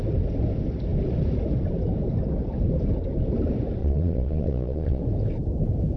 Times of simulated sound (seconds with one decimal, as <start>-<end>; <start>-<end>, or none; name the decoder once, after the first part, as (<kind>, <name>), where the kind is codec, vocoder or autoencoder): 3.8-5.0 (vocoder, Vocos)